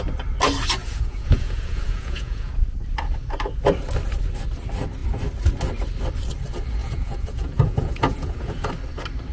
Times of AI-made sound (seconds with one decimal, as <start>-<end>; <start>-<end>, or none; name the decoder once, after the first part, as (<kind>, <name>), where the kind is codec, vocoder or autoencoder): 0.8-2.5 (vocoder, Vocos); 6.8-8.7